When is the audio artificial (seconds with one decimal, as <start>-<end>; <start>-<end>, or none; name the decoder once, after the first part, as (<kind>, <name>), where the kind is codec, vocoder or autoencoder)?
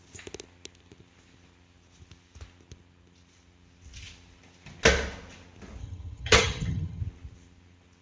5.8-7.0 (vocoder, HiFi-GAN)